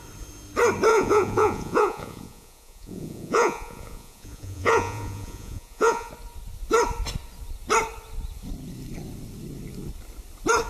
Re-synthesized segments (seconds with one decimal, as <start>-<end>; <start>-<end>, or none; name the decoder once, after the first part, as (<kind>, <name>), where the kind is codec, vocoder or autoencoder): 0.9-6.1 (vocoder, Vocos)